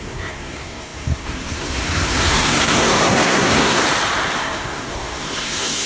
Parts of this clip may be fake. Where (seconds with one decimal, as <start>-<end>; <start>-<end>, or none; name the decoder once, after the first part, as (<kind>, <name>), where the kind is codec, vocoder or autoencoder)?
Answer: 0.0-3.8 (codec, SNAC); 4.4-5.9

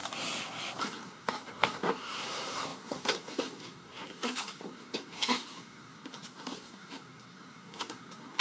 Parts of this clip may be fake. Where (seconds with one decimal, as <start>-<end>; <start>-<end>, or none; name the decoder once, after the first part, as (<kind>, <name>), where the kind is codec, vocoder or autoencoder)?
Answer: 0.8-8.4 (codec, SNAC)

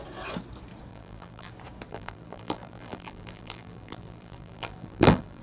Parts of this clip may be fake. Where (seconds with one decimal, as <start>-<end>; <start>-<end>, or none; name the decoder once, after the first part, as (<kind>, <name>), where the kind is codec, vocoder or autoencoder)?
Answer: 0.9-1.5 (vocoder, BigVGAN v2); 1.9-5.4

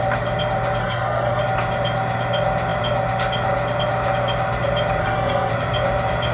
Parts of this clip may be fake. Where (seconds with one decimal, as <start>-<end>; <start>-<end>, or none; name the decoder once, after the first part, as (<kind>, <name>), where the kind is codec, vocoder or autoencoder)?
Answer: 0.8-1.4 (codec, SNAC); 5.0-5.5

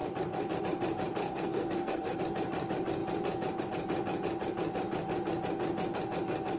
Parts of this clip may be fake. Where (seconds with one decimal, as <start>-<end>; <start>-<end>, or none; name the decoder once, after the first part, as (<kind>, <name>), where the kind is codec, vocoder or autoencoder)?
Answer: 1.2-2.2 (codec, SNAC)